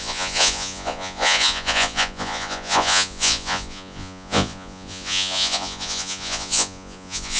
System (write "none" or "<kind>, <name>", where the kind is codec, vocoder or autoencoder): vocoder, Vocos